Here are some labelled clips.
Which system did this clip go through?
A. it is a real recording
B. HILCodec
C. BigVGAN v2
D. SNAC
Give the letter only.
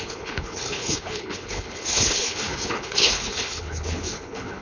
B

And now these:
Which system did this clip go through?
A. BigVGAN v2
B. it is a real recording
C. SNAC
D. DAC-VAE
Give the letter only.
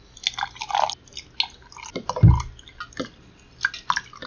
B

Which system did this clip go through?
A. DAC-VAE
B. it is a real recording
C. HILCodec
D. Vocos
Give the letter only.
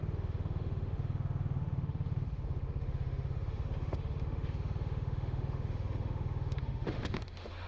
A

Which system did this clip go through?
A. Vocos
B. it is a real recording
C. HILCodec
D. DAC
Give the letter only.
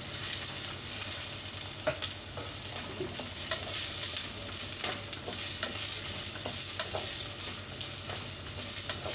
B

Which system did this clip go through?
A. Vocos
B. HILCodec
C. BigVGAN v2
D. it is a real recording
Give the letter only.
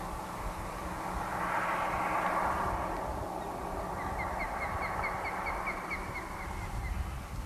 D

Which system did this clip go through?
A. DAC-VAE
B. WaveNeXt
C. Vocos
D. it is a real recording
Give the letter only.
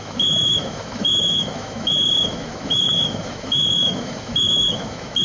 A